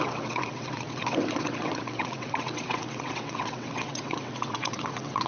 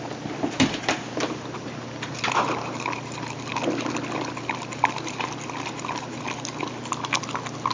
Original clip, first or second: second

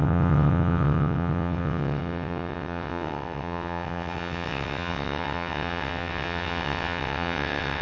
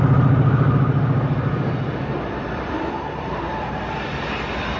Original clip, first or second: second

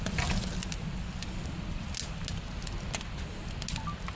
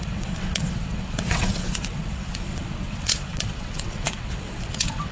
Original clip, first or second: first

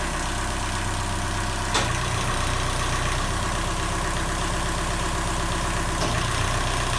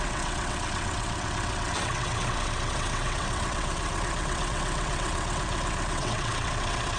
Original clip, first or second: first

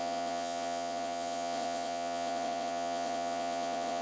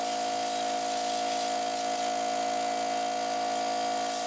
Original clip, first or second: second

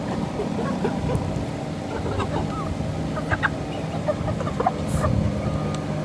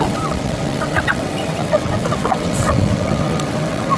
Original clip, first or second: first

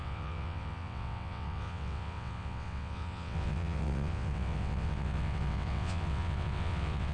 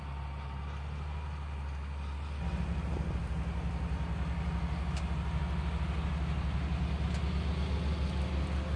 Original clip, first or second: second